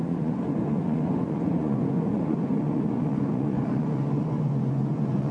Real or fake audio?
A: fake